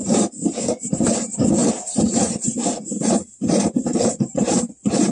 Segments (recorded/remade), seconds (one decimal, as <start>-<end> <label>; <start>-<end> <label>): 0.0-0.8 recorded; 0.8-5.1 remade